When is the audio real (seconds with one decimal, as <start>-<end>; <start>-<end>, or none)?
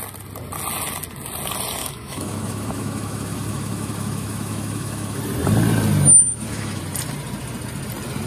0.0-1.8; 5.2-6.2; 6.8-8.3